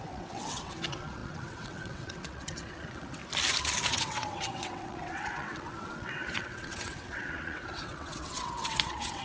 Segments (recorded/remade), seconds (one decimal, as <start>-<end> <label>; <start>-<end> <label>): 0.0-3.2 remade; 3.2-3.9 recorded; 3.9-9.2 remade